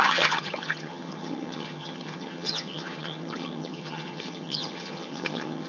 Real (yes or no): no